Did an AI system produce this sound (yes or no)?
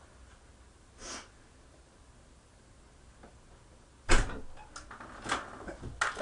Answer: no